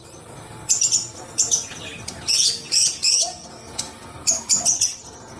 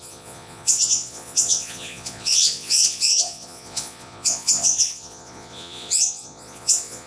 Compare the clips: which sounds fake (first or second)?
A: second